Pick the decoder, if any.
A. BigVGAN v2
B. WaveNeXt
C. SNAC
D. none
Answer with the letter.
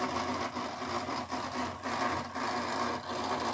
D